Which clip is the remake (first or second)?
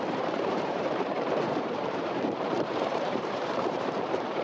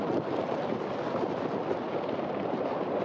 first